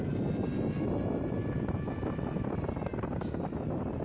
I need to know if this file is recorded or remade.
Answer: recorded